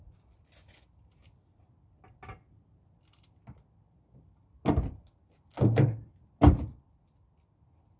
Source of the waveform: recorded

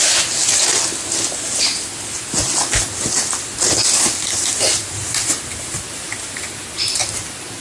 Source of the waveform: recorded